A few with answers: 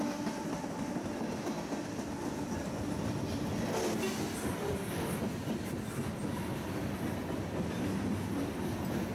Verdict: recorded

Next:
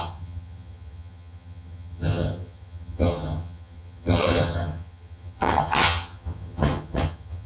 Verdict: remade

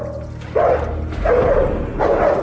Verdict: recorded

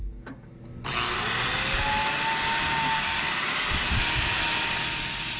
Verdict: recorded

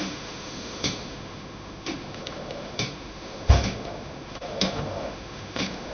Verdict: remade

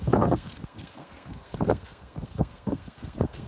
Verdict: remade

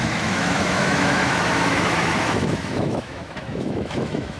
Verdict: remade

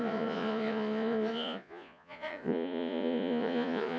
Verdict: remade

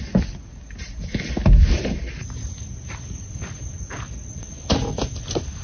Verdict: recorded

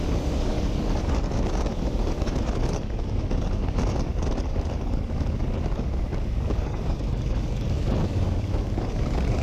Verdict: remade